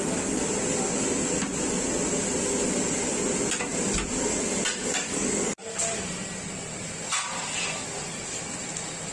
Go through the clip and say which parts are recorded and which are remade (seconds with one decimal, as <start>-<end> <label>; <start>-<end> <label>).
0.0-4.8 recorded; 4.8-5.7 remade; 5.7-9.1 recorded